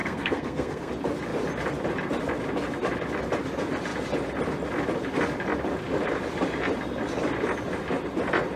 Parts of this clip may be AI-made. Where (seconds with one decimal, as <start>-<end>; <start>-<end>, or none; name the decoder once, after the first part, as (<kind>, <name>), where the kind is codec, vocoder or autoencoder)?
0.0-0.9 (codec, SNAC)